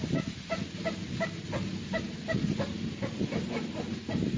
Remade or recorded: recorded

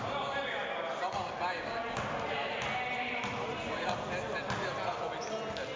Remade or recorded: recorded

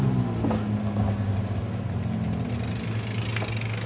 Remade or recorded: recorded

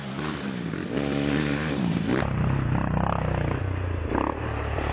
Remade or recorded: recorded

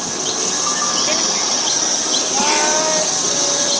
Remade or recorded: recorded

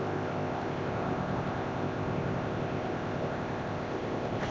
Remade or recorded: remade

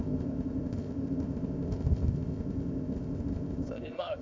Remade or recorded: remade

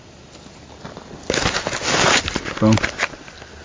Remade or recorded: recorded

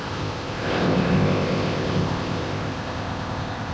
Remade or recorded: remade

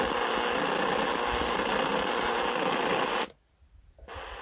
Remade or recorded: recorded